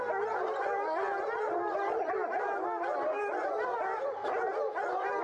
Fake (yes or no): no